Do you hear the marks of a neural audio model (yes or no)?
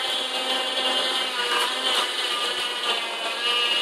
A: no